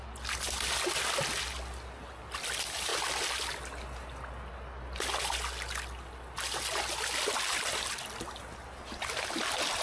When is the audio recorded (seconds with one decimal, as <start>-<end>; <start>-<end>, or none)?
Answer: 0.0-9.8